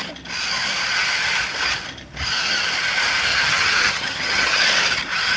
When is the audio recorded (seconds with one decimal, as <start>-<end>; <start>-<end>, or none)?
0.0-3.3; 4.6-5.4